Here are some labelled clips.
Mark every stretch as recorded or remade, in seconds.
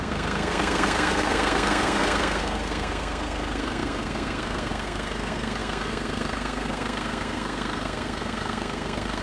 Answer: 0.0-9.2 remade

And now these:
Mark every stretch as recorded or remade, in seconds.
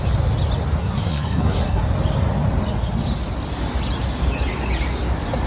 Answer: 0.0-0.8 recorded; 0.8-1.8 remade; 1.8-5.5 recorded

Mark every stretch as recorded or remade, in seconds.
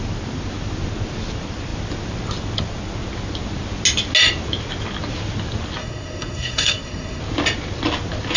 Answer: 0.0-5.8 recorded; 5.8-7.2 remade; 7.2-8.4 recorded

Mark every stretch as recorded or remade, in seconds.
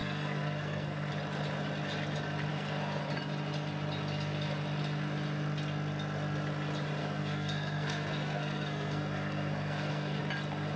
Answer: 0.0-1.1 remade; 1.1-2.5 recorded; 2.5-3.0 remade; 3.0-7.0 recorded; 7.0-10.2 remade; 10.2-10.8 recorded